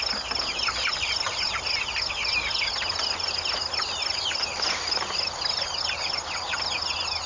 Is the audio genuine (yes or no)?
yes